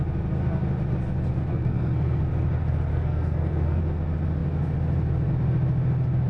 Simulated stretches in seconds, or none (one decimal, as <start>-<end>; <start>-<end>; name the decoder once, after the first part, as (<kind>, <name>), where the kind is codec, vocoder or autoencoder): 1.5-2.2 (codec, SNAC); 2.9-3.8